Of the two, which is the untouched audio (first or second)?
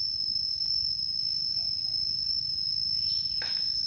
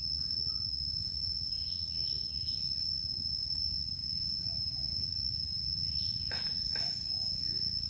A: first